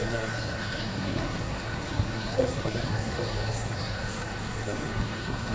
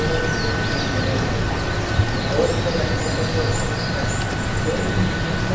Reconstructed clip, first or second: first